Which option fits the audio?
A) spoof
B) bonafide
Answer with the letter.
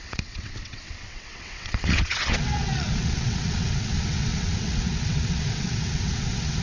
A